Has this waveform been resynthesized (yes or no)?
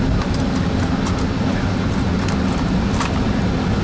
no